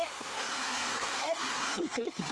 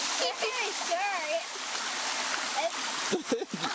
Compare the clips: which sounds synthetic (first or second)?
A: first